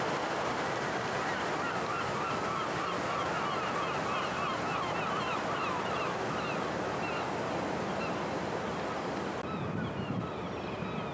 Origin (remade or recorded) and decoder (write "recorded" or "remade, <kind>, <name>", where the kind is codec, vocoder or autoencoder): recorded